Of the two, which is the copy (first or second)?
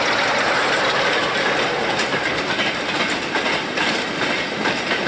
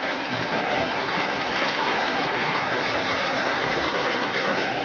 second